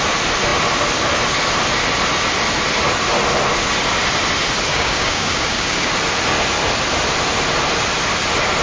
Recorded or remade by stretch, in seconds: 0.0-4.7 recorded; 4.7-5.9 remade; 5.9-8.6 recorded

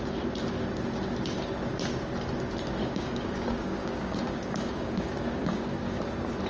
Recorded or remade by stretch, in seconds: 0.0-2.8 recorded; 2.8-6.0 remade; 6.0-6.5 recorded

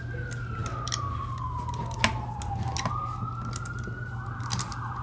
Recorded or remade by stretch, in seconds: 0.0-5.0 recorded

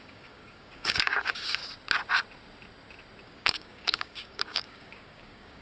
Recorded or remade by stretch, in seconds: 0.0-1.6 remade; 1.6-3.2 recorded; 3.2-5.6 remade